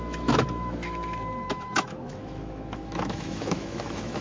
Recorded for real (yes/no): no